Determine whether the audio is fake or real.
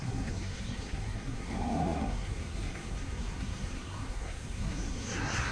fake